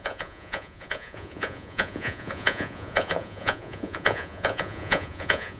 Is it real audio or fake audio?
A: fake